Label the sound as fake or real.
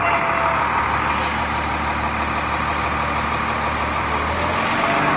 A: real